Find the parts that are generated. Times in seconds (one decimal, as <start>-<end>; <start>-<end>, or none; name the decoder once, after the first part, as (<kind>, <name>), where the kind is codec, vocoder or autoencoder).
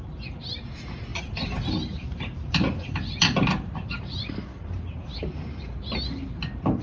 1.1-5.2 (vocoder, BigVGAN v2)